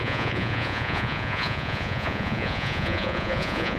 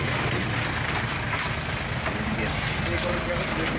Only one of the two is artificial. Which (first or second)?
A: first